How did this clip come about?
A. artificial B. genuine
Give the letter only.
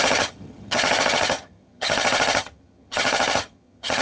A